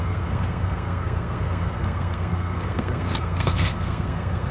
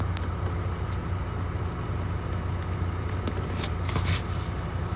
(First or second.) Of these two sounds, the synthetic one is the first